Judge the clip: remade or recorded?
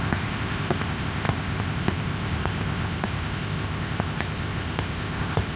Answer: remade